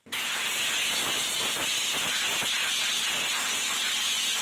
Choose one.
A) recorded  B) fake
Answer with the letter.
A